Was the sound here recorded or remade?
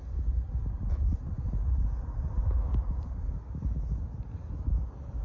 recorded